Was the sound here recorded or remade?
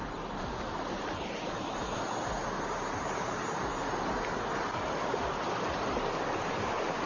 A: recorded